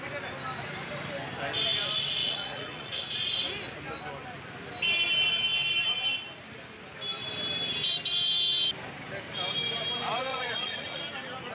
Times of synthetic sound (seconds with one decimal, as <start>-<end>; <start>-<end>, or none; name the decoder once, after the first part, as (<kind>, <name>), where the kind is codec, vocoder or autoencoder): 2.2-3.0 (vocoder, Vocos); 10.3-11.0